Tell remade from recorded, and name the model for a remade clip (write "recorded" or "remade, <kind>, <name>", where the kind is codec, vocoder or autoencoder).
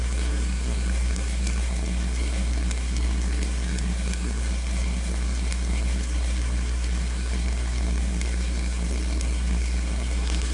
remade, codec, SNAC